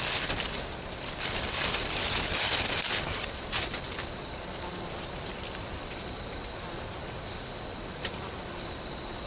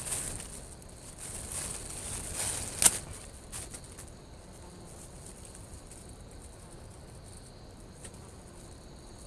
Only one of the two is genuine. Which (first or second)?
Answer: second